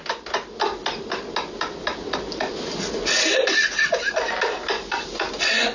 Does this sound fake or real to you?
real